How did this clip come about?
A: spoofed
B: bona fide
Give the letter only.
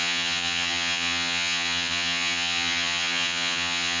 A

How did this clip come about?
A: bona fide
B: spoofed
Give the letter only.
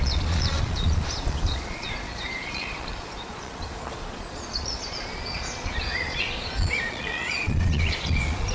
B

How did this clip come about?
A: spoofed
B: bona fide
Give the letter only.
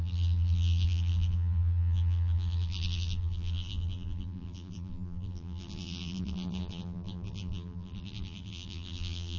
A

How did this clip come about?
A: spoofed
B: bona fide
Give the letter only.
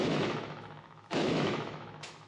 A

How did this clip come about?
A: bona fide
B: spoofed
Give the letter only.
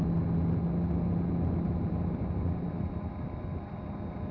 A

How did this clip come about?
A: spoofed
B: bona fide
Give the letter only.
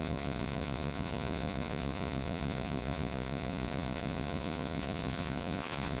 A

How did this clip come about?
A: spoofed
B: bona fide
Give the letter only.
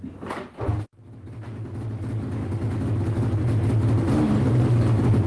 B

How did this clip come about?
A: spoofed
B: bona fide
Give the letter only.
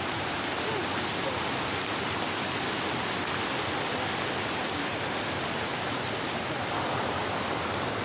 B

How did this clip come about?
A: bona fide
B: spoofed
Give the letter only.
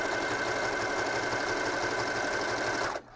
A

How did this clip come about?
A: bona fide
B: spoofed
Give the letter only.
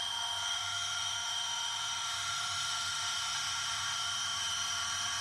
B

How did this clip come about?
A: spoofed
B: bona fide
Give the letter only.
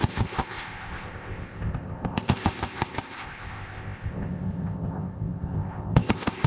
A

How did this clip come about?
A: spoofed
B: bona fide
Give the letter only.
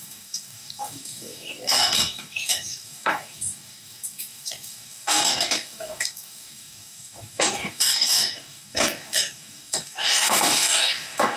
A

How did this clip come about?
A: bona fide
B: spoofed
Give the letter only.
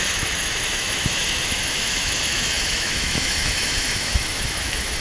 B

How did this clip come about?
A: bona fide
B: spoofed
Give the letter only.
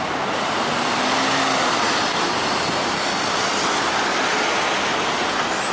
A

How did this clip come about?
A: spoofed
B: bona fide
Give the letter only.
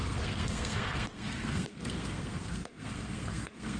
A